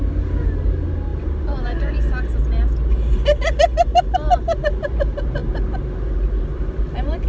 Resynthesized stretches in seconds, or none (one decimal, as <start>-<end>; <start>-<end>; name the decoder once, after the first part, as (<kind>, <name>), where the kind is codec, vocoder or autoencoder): none